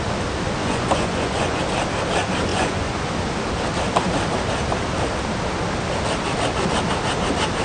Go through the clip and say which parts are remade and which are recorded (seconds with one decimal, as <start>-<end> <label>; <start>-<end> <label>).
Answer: 0.0-0.6 recorded; 0.6-1.6 remade; 1.6-2.5 recorded; 2.5-3.1 remade; 3.1-7.6 recorded